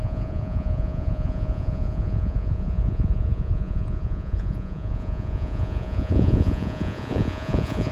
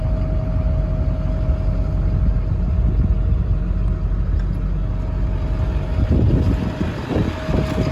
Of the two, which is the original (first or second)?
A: second